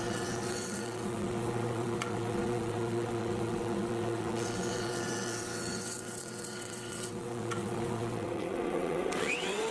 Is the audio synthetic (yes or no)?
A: yes